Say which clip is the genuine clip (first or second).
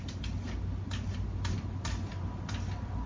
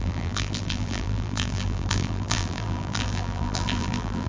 first